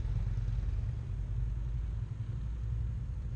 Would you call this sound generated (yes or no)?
no